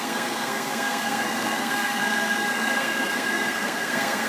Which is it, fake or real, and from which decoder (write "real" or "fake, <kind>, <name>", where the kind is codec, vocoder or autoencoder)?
fake, codec, SNAC